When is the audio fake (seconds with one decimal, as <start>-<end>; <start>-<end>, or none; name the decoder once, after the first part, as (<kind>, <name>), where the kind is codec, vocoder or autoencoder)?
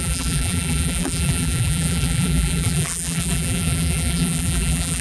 0.0-5.0 (vocoder, BigVGAN v2)